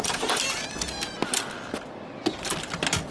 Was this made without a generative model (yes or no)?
yes